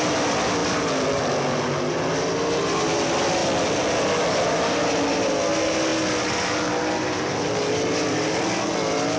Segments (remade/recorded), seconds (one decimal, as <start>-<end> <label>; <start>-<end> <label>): 0.0-9.2 recorded